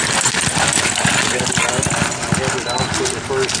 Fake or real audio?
real